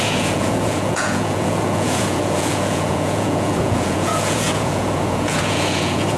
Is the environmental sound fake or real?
fake